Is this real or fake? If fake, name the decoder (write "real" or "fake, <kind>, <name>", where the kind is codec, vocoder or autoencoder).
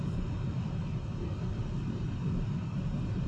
real